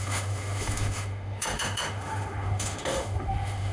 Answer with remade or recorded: remade